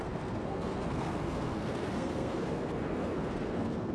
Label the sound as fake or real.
fake